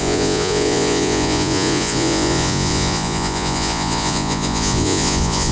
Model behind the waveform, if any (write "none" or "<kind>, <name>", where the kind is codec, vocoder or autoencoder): vocoder, Vocos